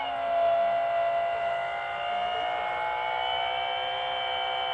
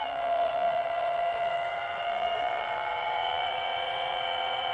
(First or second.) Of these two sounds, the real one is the first